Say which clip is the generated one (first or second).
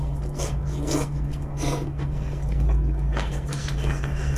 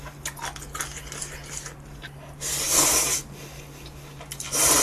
first